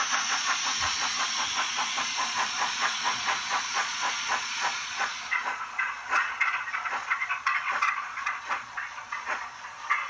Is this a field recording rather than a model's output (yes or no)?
no